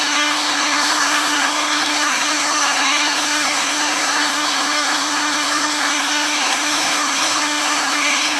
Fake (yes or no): yes